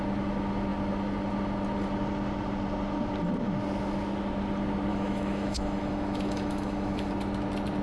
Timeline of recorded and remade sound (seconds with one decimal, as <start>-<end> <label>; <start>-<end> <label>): 0.0-4.9 recorded; 4.9-7.1 remade; 7.1-7.8 recorded